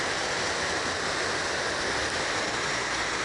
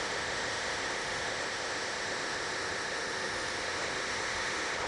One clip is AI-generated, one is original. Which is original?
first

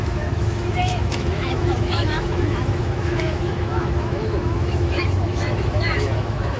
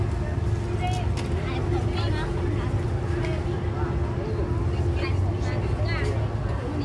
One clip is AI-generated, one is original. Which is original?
second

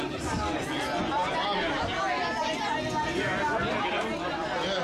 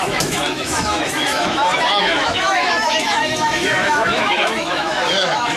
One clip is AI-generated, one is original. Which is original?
first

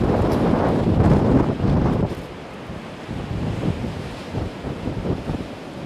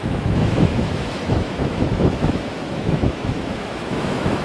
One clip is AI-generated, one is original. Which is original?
first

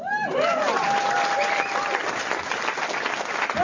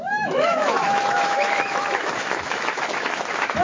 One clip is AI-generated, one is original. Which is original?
first